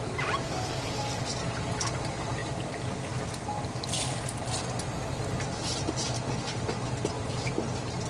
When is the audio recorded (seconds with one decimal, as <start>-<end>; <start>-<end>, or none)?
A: 0.0-8.1